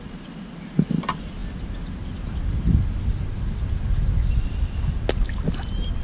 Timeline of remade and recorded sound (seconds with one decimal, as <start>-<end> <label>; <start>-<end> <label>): 0.0-6.0 recorded